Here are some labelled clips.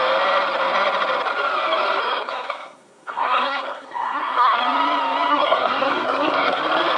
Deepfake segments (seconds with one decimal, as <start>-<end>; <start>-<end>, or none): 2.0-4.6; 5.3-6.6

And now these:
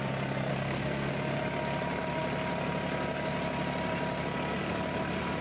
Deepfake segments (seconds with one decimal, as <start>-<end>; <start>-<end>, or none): 0.5-1.1

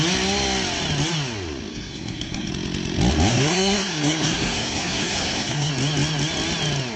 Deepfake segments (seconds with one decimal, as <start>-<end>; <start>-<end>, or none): 1.7-2.5; 3.3-5.7

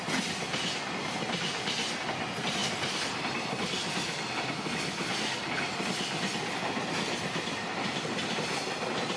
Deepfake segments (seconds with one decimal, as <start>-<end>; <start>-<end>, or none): none

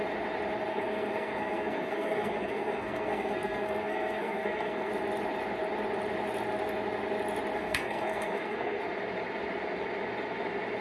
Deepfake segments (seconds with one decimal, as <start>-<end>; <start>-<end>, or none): 0.7-4.9; 7.6-8.8

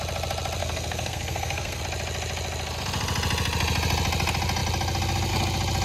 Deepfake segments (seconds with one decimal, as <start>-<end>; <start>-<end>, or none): 0.6-1.8